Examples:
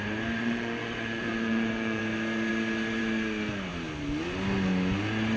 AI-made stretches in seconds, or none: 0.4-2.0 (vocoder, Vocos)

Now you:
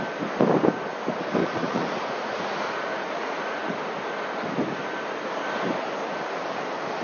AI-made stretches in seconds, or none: 1.4-3.8 (vocoder, Vocos)

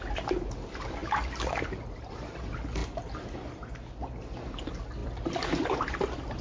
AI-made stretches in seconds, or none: none

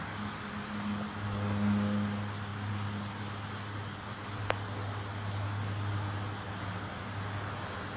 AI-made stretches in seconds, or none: none

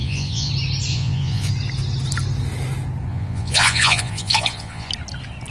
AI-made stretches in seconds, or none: 0.0-0.5 (vocoder, Vocos); 0.9-1.5; 3.1-4.9

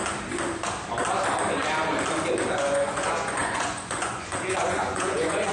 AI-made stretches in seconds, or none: 2.5-5.5 (vocoder, Vocos)